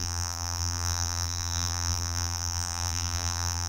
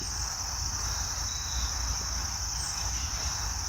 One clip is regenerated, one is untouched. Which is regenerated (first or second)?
first